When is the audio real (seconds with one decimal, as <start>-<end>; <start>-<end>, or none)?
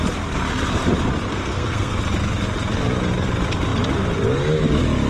0.0-1.3; 2.0-5.1